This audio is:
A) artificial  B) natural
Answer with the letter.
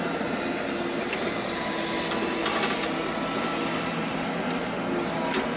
B